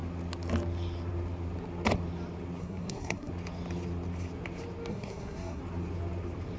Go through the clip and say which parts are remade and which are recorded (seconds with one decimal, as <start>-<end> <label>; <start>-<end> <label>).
0.0-2.6 recorded; 2.6-3.3 remade; 3.3-4.9 recorded; 4.9-5.6 remade; 5.6-6.6 recorded